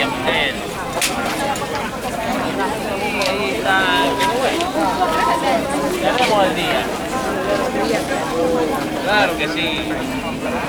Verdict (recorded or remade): recorded